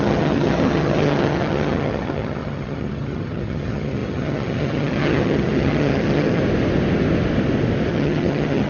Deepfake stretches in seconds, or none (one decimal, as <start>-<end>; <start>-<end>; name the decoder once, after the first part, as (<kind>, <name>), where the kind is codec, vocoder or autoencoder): 0.0-6.4 (vocoder, HiFi-GAN); 7.9-8.7